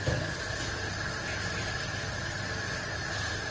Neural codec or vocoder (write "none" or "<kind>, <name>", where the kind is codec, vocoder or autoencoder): none